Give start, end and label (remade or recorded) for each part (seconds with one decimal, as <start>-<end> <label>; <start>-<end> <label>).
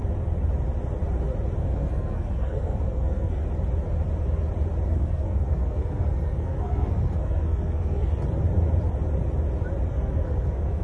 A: 0.0-1.6 recorded; 1.6-3.4 remade; 3.4-4.9 recorded; 4.9-8.1 remade; 8.1-9.9 recorded; 9.9-10.8 remade